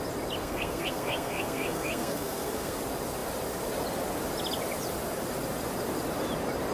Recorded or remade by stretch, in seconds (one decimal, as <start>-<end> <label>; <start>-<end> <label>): 0.0-0.4 recorded; 0.4-2.8 remade; 2.8-6.7 recorded